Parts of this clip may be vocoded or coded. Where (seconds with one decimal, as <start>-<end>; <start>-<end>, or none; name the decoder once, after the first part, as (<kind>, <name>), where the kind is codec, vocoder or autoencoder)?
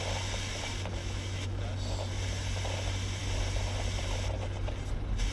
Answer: 1.0-1.6 (autoencoder, DAC-VAE)